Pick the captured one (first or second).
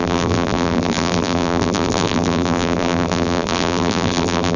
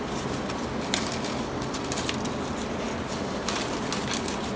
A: second